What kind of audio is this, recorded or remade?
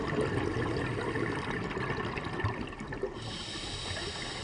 recorded